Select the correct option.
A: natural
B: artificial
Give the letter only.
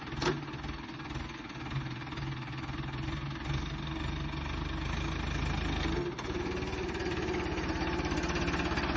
A